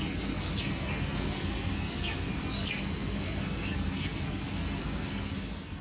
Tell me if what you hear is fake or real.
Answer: fake